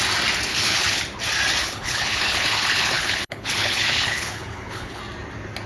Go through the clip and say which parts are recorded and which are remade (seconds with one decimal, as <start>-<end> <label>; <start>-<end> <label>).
0.0-0.5 recorded; 0.5-1.0 remade; 1.0-1.6 recorded; 1.6-5.0 remade; 5.0-5.7 recorded